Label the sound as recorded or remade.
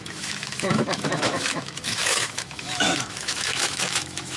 remade